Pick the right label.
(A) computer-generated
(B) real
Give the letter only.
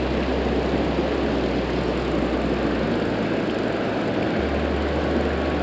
B